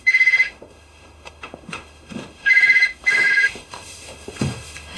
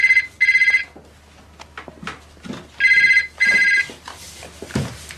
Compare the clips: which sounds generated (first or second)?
first